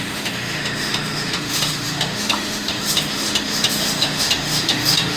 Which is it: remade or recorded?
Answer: remade